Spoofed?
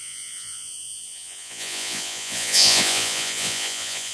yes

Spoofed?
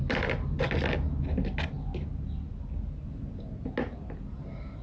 no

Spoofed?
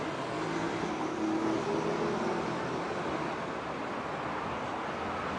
no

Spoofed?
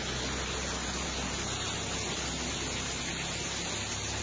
no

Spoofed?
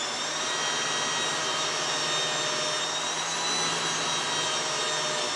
no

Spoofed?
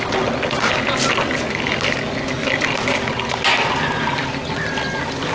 no